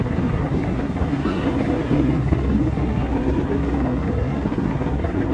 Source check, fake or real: fake